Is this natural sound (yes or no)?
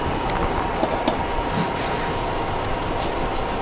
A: yes